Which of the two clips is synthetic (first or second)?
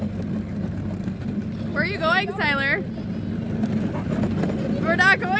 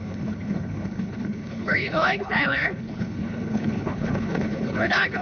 second